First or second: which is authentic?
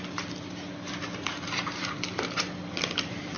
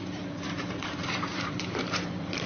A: first